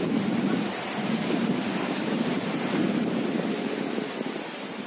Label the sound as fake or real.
fake